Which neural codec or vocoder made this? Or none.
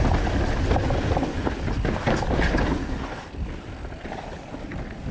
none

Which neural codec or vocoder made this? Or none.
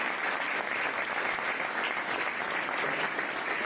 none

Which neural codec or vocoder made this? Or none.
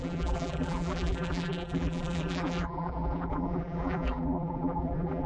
vocoder, BigVGAN v2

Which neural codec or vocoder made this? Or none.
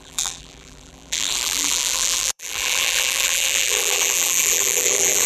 vocoder, BigVGAN v2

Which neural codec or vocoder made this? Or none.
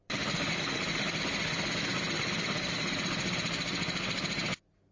none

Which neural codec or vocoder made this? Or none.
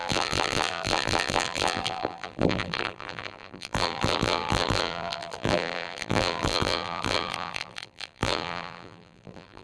vocoder, BigVGAN v2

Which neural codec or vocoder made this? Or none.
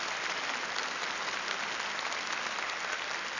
none